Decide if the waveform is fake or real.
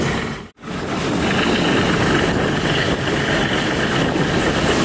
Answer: real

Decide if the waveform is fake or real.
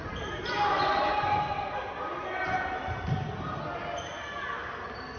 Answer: real